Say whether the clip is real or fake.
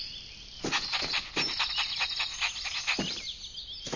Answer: real